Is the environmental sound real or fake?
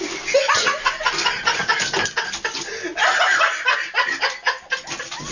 real